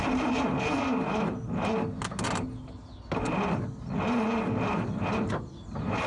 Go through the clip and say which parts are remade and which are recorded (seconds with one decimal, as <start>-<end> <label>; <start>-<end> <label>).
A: 0.0-6.1 recorded